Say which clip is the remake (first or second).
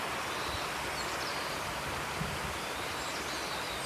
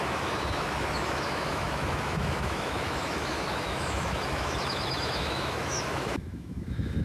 second